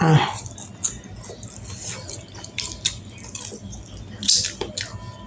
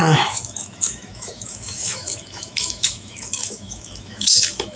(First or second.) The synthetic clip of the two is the second